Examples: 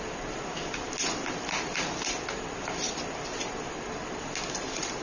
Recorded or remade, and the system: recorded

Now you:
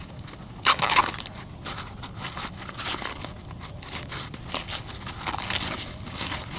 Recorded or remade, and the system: recorded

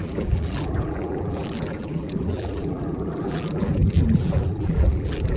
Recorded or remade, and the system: remade, vocoder, BigVGAN v2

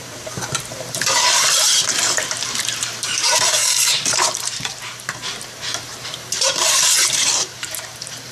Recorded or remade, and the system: remade, vocoder, BigVGAN v2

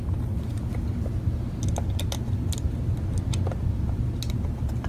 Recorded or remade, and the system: recorded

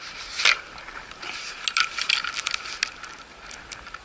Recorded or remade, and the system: recorded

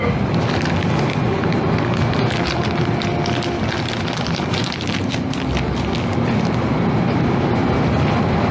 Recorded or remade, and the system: recorded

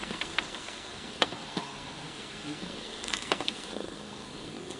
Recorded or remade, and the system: remade, codec, SNAC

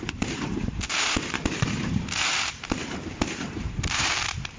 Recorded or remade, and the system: remade, vocoder, BigVGAN v2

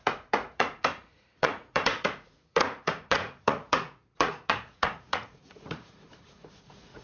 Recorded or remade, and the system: remade, vocoder, Vocos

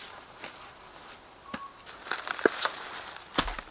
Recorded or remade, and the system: recorded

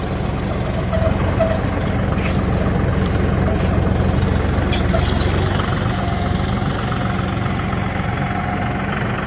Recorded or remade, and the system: recorded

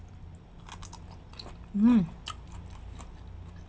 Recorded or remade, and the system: recorded